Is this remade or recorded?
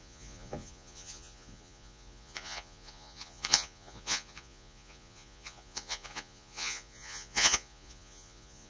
remade